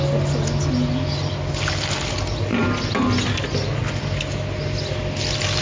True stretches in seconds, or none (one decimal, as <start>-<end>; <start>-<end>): 0.0-5.6